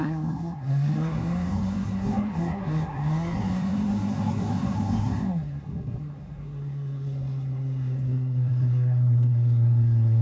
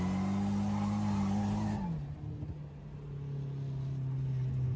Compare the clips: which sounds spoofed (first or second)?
first